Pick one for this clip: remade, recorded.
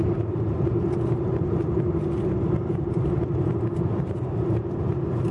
remade